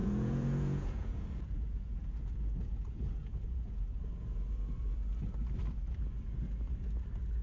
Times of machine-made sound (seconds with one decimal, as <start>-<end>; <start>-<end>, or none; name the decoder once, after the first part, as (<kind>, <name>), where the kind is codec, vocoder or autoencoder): 0.0-4.0 (vocoder, Vocos)